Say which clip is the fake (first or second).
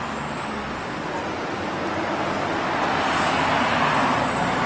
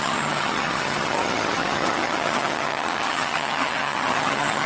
second